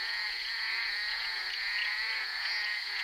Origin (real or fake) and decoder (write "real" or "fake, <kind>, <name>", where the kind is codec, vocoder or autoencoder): fake, vocoder, Vocos